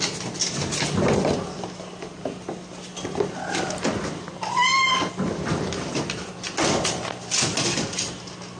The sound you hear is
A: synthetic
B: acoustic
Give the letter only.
B